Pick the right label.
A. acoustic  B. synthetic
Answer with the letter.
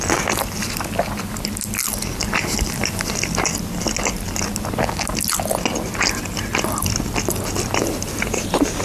A